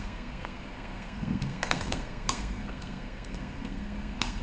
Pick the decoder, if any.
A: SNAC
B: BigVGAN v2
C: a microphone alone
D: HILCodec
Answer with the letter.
A